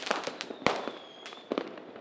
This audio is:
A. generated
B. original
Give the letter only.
B